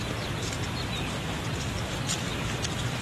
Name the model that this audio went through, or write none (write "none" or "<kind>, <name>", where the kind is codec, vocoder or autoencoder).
none